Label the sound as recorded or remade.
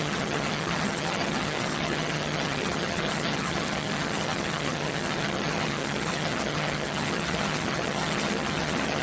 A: remade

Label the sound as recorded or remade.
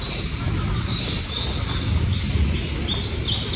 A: recorded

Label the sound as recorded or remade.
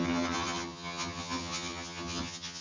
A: remade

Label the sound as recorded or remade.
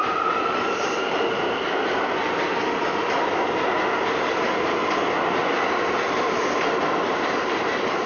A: recorded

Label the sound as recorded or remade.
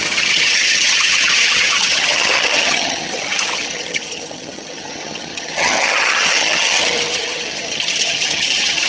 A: remade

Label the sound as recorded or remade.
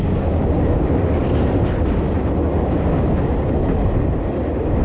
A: recorded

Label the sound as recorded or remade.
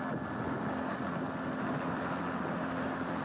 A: recorded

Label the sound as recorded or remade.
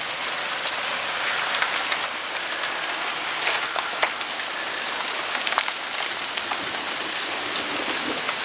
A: recorded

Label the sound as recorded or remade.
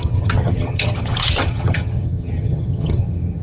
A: remade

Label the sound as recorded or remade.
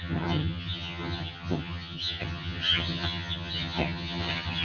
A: remade